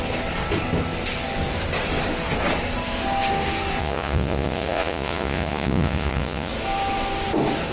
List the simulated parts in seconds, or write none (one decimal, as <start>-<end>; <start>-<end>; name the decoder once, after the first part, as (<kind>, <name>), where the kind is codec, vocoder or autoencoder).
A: 3.8-6.5 (vocoder, Vocos)